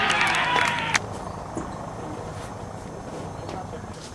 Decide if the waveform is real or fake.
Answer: real